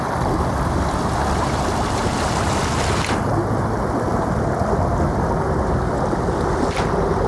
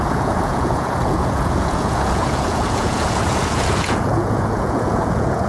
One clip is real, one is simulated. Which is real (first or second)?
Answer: first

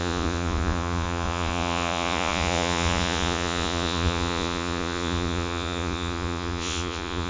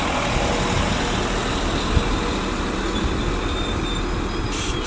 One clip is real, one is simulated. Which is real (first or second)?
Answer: second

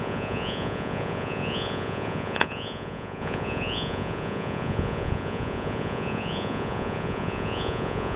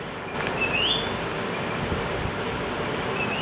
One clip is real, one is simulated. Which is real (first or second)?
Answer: second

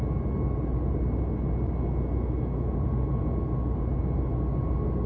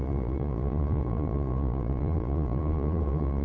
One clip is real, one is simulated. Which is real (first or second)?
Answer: first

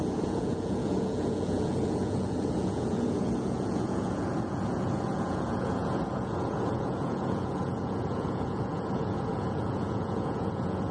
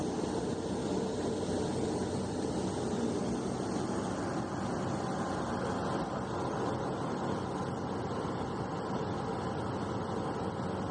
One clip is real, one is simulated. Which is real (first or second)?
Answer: second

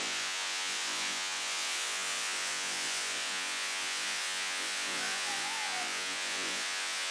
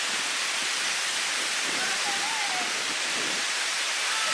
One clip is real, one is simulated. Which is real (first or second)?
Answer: second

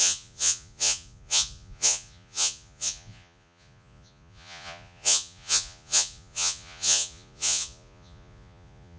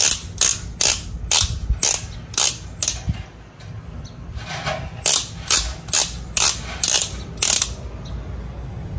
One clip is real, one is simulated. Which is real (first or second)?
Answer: second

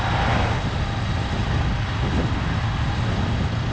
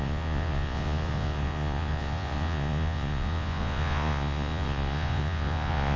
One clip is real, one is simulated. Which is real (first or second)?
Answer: first